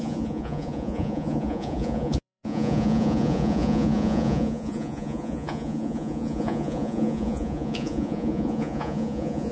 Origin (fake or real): fake